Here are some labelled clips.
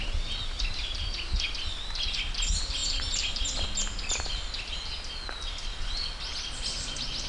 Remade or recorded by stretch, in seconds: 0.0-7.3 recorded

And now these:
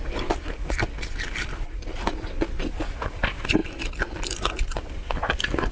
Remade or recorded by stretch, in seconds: 0.0-5.7 recorded

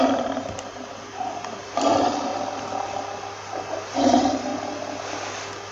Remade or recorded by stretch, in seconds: 0.0-2.3 remade; 2.3-3.7 recorded; 3.7-4.5 remade; 4.5-5.7 recorded